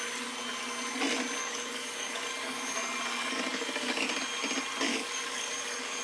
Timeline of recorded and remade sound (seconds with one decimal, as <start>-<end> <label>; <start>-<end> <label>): 0.0-1.4 recorded; 1.4-4.1 remade; 4.1-4.9 recorded; 4.9-6.0 remade